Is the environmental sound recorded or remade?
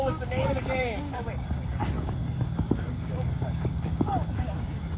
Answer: remade